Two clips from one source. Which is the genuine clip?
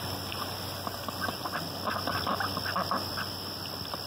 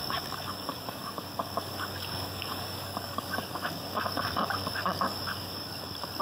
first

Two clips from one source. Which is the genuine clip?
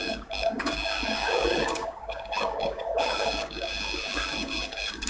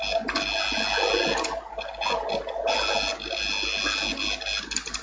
second